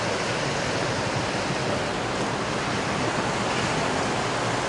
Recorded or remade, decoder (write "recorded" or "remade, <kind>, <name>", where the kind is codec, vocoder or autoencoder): recorded